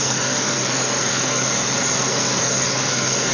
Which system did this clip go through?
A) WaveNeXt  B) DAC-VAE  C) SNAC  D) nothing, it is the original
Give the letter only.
C